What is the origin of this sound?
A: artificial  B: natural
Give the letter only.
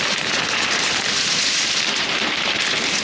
A